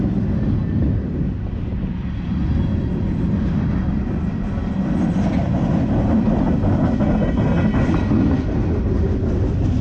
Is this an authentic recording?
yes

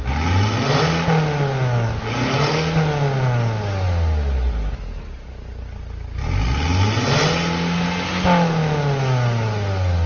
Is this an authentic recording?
yes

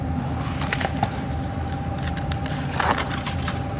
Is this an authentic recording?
yes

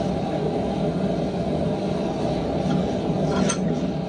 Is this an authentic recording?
yes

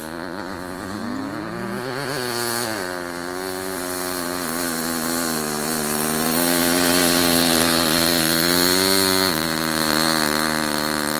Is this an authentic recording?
yes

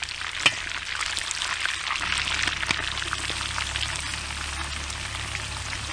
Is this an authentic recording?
yes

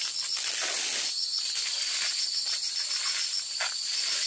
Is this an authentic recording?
yes